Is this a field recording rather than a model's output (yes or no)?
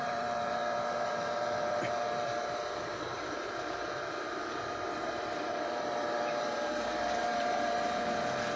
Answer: no